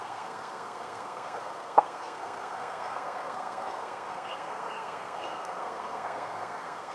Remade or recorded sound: remade